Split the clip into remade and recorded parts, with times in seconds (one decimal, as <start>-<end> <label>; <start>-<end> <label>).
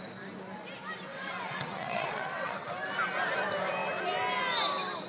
0.0-1.1 recorded; 1.1-2.7 remade; 2.7-5.1 recorded